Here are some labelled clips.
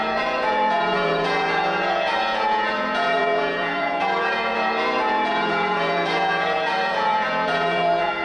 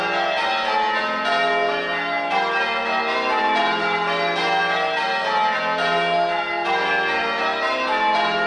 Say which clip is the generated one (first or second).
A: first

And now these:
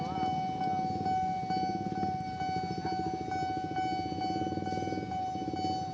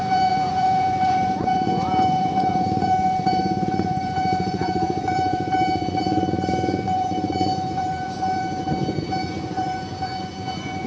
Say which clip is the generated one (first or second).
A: second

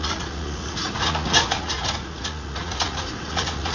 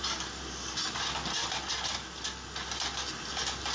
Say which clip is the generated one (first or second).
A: first